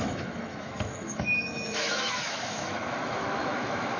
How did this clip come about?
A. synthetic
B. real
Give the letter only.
A